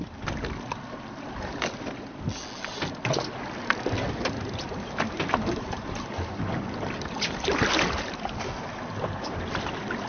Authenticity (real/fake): real